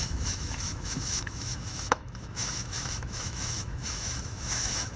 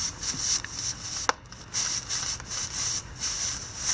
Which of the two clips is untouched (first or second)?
second